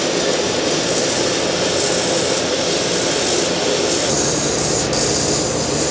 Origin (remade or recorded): recorded